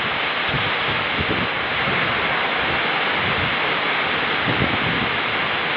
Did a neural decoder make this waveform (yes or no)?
no